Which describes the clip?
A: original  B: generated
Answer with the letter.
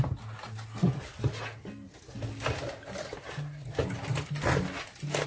A